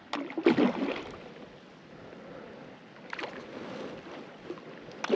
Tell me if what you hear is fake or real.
real